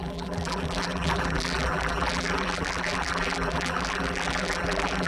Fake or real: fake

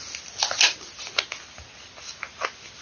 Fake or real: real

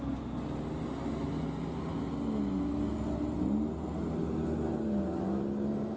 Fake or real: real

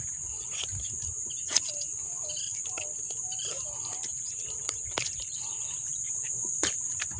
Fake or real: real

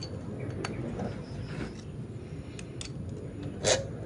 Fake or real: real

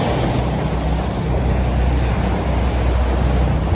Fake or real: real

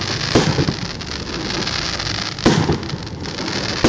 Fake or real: real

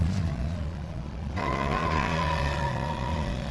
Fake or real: fake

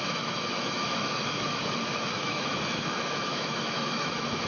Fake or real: fake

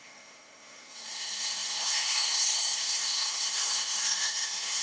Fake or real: fake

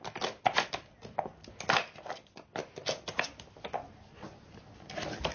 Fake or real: real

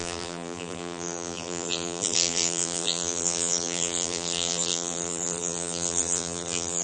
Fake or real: fake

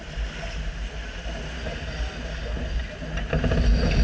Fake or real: real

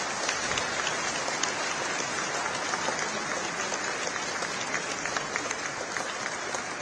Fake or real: real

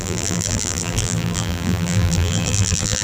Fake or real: fake